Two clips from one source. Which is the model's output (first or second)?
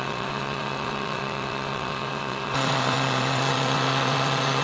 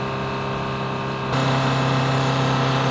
first